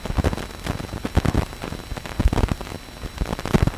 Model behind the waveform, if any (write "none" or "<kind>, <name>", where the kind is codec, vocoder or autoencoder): none